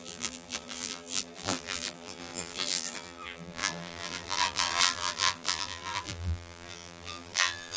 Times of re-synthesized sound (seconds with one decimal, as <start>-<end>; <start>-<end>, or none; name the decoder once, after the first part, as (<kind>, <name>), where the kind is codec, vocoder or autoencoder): 0.0-7.8 (vocoder, BigVGAN v2)